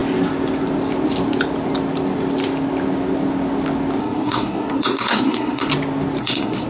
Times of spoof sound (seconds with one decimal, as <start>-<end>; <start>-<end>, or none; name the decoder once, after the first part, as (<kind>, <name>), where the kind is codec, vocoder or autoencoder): 4.0-5.7 (codec, SNAC); 6.2-6.7